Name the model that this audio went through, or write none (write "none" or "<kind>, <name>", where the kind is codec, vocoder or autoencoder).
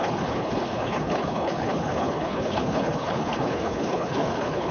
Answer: codec, HILCodec